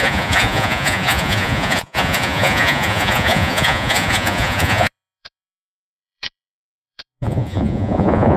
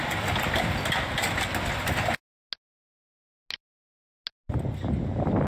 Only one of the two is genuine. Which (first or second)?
second